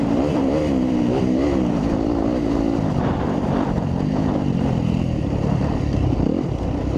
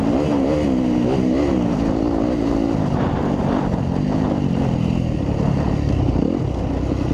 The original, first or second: second